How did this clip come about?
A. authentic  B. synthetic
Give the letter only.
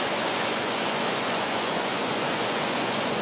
B